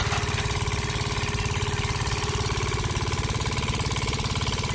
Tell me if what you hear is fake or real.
real